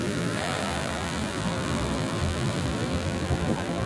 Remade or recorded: remade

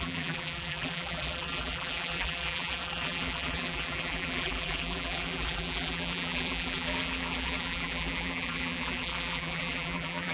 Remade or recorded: remade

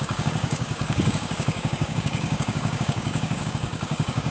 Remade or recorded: remade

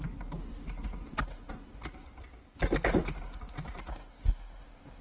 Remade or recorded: recorded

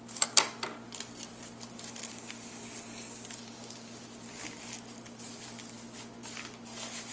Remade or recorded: recorded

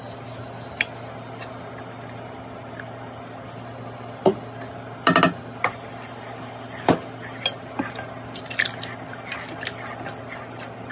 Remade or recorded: recorded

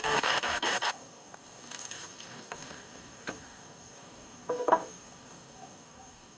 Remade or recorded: remade